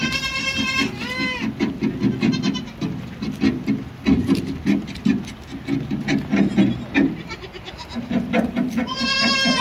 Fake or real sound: real